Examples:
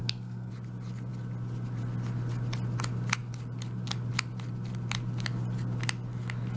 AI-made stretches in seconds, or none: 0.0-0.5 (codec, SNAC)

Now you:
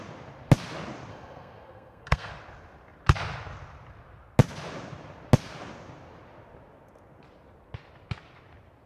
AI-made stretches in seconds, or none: 1.1-2.3 (codec, SNAC)

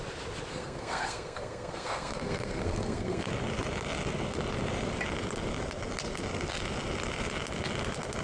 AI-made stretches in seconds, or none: 0.5-3.3 (codec, SNAC)

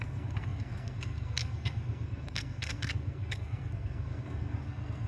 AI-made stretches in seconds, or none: 0.0-5.1 (codec, SNAC)

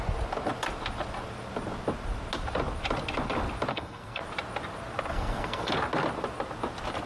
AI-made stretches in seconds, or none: 3.7-4.2 (codec, SNAC); 5.1-5.7

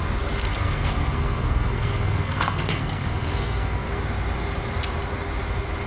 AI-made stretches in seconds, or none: 0.5-4.0 (codec, SNAC)

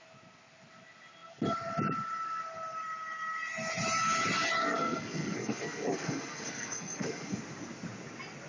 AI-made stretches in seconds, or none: 4.6-7.4 (codec, SNAC)